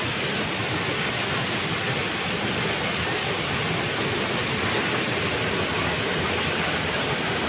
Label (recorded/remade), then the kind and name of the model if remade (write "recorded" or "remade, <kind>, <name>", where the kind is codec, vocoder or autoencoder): recorded